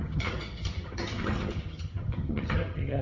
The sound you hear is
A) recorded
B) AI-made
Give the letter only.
B